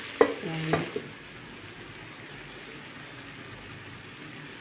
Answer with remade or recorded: recorded